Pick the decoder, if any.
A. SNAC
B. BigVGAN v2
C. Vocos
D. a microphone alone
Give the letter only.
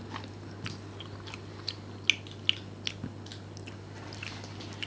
D